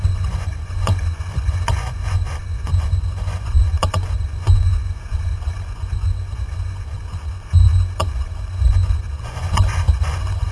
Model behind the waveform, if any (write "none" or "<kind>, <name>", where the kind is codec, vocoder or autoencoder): vocoder, Vocos